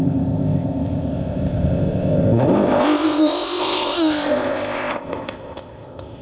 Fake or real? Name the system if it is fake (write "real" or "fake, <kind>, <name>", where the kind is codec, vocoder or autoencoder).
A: fake, codec, ZipCodec